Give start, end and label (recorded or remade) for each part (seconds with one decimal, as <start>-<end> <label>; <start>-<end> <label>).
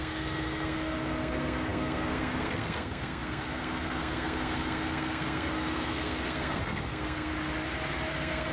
0.0-7.3 remade; 7.3-8.1 recorded; 8.1-8.5 remade